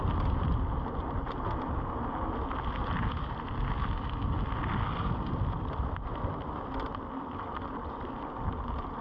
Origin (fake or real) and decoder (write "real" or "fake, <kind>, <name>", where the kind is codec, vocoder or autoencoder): real